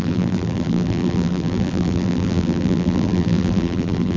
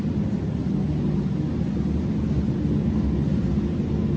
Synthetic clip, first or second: first